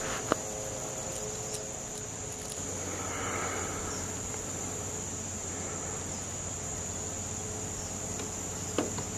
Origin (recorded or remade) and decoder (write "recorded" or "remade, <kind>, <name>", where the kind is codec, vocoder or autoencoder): recorded